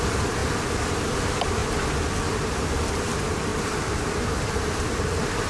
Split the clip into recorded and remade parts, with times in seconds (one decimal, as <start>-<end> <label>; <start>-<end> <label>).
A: 0.0-0.4 remade; 0.4-0.9 recorded; 0.9-1.6 remade; 1.6-2.9 recorded; 2.9-5.5 remade